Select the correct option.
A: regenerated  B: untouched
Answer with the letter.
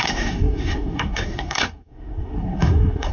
A